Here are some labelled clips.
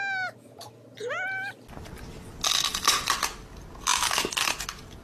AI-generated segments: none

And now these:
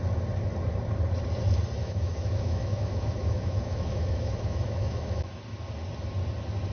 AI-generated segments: 1.8-5.4 (autoencoder, DAC-VAE)

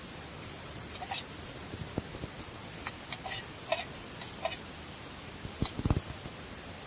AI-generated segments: none

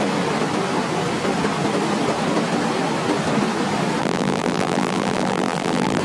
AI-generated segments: 4.0-6.0 (vocoder, BigVGAN v2)

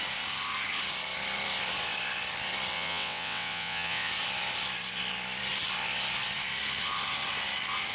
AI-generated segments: 2.7-4.1 (vocoder, WaveNeXt)

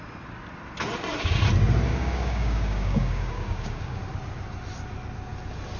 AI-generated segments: 1.9-4.0 (codec, DAC)

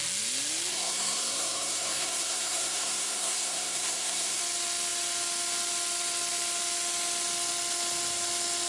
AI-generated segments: 0.7-4.4 (codec, SNAC)